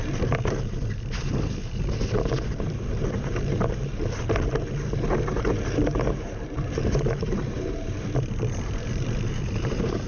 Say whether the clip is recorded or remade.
remade